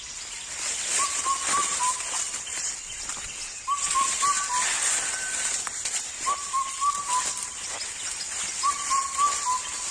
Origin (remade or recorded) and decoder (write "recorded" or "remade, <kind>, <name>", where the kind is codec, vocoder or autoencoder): recorded